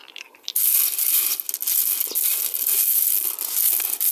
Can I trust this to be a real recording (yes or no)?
yes